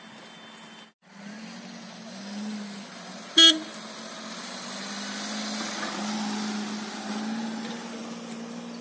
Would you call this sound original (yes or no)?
yes